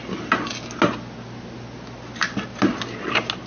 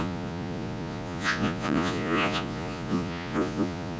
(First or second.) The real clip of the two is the first